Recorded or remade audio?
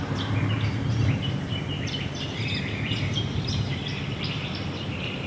remade